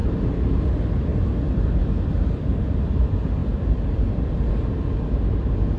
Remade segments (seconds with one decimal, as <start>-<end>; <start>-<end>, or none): 0.0-0.7; 3.4-4.5

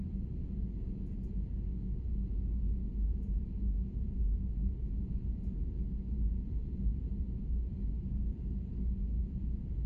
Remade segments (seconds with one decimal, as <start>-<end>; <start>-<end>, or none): 0.0-9.9

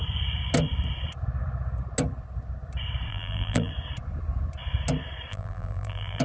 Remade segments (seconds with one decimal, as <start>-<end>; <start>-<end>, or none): 3.1-3.7; 5.3-6.2

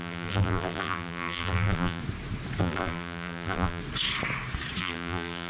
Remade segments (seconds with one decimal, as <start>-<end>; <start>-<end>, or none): 0.0-2.0; 2.6-3.8; 4.8-5.5

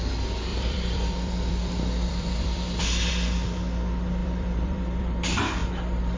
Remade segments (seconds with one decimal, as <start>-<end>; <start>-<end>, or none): 0.5-3.1; 4.2-5.1

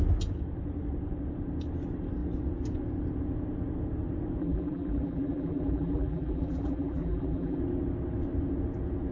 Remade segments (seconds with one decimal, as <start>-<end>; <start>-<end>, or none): 4.4-7.6